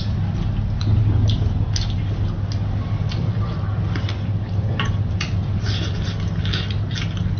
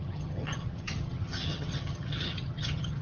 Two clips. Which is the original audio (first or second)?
first